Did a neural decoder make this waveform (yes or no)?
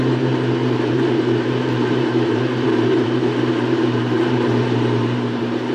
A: yes